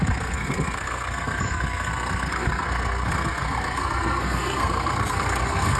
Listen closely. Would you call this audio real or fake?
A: fake